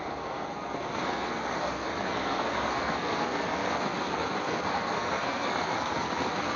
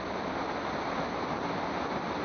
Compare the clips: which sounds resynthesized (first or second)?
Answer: first